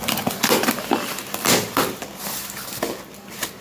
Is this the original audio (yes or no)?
yes